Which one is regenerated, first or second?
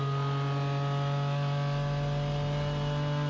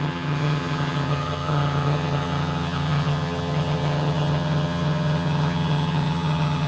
second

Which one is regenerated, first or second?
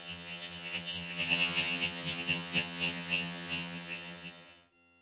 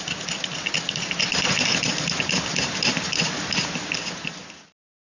first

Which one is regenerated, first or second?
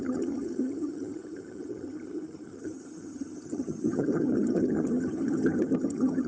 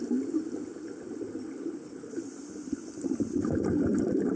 first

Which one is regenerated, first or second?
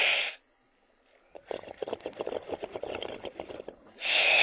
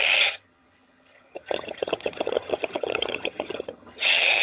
second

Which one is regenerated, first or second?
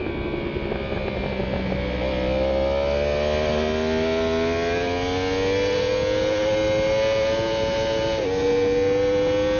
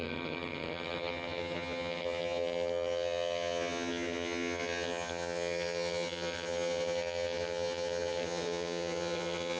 second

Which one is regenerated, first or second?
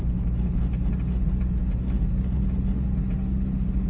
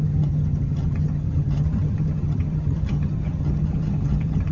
second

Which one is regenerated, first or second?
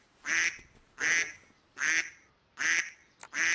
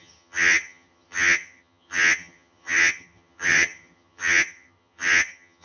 second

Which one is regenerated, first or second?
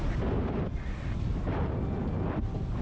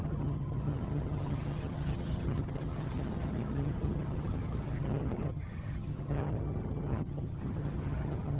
second